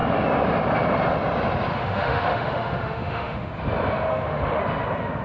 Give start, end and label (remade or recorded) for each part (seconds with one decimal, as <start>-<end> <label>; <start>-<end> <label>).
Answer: 0.0-1.7 recorded; 1.7-3.5 remade; 3.5-4.1 recorded; 4.1-4.6 remade; 4.6-5.2 recorded